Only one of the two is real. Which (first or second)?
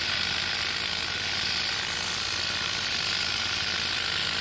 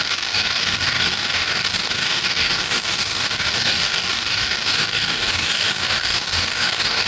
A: first